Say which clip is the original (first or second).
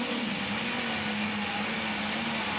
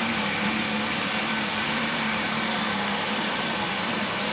first